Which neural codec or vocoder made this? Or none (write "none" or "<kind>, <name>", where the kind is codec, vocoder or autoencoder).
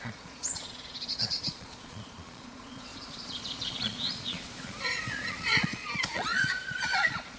vocoder, Vocos